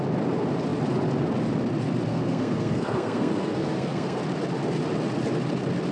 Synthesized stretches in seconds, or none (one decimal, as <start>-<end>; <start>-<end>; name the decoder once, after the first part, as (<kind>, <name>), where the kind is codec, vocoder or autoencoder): 2.1-4.2 (codec, SNAC)